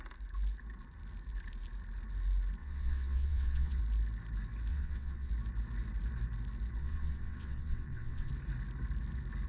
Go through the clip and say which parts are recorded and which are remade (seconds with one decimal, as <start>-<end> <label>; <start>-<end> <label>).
0.0-2.6 recorded; 2.6-3.8 remade; 3.8-4.7 recorded; 4.7-5.3 remade; 5.3-6.8 recorded; 6.8-8.3 remade; 8.3-9.5 recorded